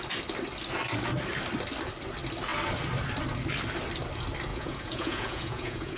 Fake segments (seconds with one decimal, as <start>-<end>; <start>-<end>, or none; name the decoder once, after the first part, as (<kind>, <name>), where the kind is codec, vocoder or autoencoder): 4.5-6.0 (vocoder, Vocos)